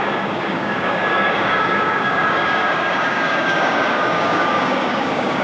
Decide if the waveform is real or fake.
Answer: fake